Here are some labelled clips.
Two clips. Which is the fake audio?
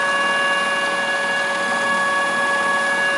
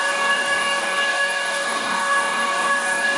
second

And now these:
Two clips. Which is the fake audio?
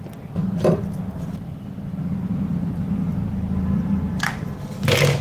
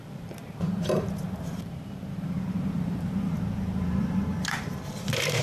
second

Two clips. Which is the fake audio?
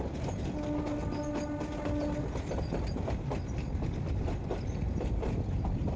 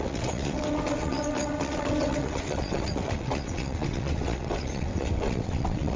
second